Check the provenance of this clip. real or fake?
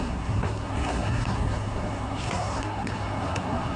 fake